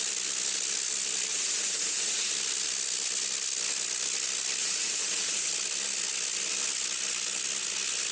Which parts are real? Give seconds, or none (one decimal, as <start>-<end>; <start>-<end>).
0.0-1.3; 2.3-4.6; 5.5-8.1